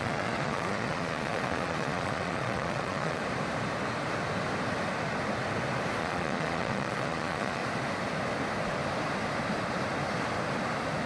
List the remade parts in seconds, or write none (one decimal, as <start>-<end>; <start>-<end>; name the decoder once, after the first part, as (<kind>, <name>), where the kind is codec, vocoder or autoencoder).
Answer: 0.0-3.2 (vocoder, Vocos); 6.0-7.6